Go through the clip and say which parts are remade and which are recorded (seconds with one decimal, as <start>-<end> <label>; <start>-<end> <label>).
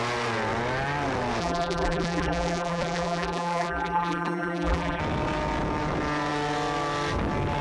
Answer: 0.0-1.4 recorded; 1.4-5.0 remade; 5.0-7.6 recorded